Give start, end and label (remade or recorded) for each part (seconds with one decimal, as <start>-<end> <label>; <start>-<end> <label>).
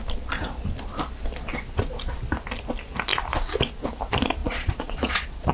0.0-4.4 recorded; 4.4-5.5 remade